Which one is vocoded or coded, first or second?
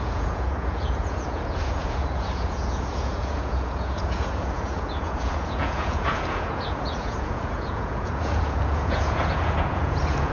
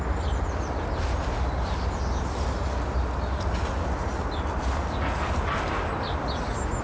first